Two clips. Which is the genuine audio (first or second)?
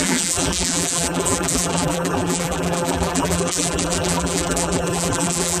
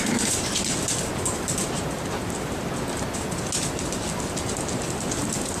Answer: second